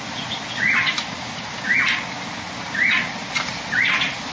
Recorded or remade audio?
recorded